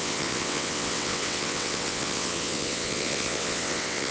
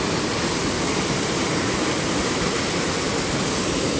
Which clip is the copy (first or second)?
first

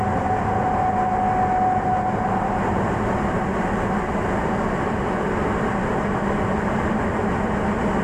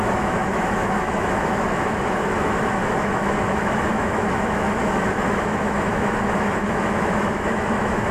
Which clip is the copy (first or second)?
second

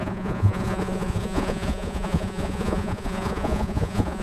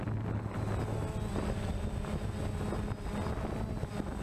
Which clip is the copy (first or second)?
first